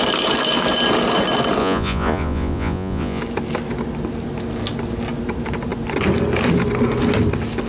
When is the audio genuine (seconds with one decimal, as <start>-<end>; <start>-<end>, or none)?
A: 0.0-1.6; 3.2-7.7